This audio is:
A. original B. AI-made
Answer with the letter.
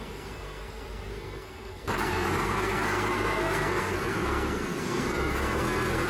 B